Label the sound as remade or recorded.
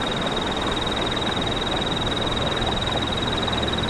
recorded